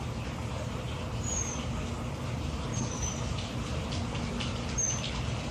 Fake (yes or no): yes